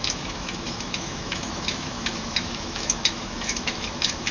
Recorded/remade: remade